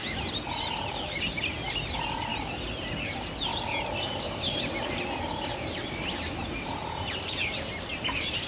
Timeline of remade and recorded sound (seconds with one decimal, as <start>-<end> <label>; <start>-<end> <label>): 0.0-2.3 remade; 2.3-6.8 recorded; 6.8-8.5 remade